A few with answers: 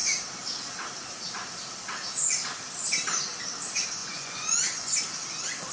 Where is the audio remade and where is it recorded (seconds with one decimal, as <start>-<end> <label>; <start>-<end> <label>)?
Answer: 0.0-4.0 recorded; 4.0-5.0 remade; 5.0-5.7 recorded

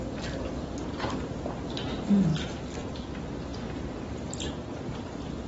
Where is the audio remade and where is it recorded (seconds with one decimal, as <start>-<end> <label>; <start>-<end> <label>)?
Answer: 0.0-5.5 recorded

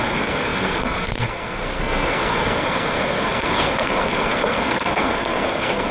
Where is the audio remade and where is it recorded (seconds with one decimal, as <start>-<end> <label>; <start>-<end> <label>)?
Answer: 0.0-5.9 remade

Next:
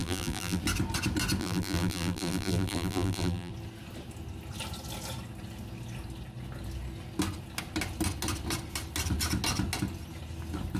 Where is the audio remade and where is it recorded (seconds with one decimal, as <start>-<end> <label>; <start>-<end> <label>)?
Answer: 0.0-0.6 remade; 0.6-1.4 recorded; 1.4-3.5 remade; 3.5-10.8 recorded

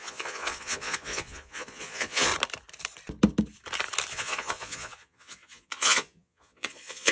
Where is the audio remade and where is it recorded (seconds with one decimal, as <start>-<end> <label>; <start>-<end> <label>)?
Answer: 0.0-2.3 remade; 2.3-4.1 recorded; 4.1-7.1 remade

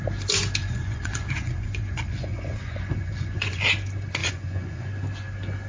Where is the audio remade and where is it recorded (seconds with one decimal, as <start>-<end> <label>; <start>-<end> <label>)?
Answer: 0.0-0.6 recorded; 0.6-3.6 remade; 3.6-4.2 recorded; 4.2-4.9 remade; 4.9-5.7 recorded

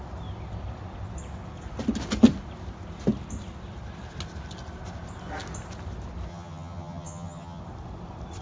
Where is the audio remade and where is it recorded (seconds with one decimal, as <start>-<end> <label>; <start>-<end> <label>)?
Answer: 0.0-6.3 recorded; 6.3-7.6 remade; 7.6-8.4 recorded